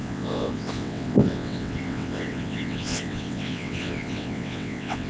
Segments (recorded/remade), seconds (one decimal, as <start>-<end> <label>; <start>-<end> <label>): 0.0-5.1 remade